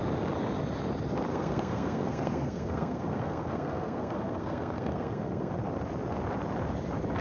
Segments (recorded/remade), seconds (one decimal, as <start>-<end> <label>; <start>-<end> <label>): 0.0-1.3 recorded; 1.3-5.5 remade; 5.5-7.2 recorded